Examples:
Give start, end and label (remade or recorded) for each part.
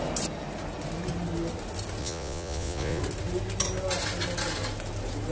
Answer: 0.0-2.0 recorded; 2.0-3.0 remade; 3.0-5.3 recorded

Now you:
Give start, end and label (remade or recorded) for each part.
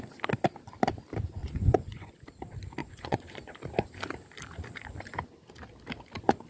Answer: 0.0-1.4 recorded; 1.4-2.1 remade; 2.1-2.8 recorded; 2.8-3.5 remade; 3.5-6.5 recorded